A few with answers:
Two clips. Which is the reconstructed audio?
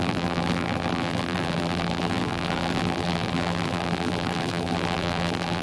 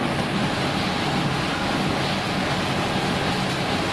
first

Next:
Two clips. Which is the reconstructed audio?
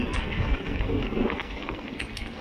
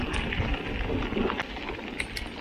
first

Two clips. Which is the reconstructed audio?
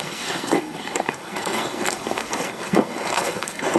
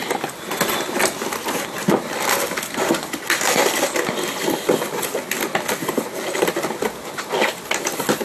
first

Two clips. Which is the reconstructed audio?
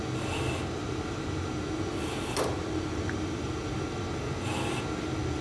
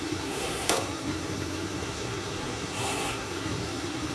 second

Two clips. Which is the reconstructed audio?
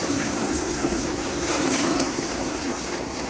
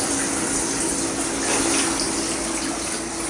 first